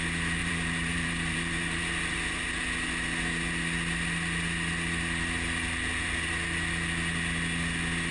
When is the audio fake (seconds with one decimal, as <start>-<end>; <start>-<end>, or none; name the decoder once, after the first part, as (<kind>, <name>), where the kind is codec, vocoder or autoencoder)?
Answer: 0.4-1.8 (vocoder, BigVGAN v2)